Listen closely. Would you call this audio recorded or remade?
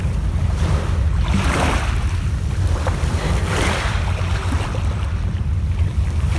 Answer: remade